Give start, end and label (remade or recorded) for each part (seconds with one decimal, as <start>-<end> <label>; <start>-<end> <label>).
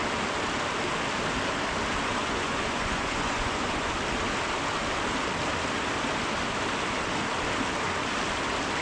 0.0-2.2 recorded; 2.2-3.9 remade; 3.9-8.8 recorded